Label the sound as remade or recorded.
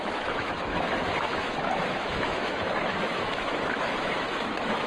remade